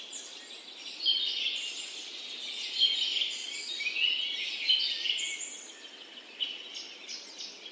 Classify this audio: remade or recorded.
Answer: recorded